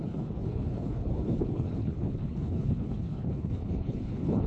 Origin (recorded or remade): remade